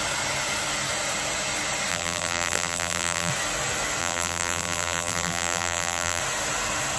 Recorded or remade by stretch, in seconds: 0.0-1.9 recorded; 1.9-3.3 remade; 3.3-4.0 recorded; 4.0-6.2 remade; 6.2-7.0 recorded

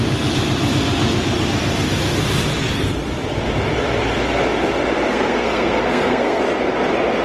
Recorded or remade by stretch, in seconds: 0.0-5.1 recorded; 5.1-6.4 remade; 6.4-7.2 recorded

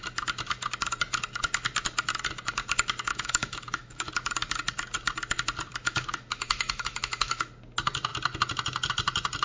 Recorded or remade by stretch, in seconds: 0.0-3.1 recorded; 3.1-4.1 remade; 4.1-5.8 recorded; 5.8-7.5 remade; 7.5-9.4 recorded